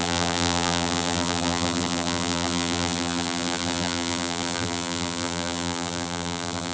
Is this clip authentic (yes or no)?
no